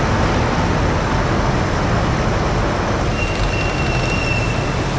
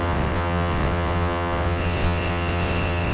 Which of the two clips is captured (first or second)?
first